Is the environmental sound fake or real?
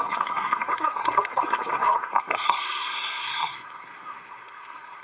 fake